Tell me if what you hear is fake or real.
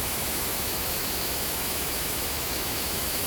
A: fake